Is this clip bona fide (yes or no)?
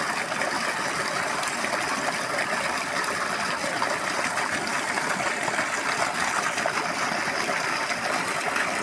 yes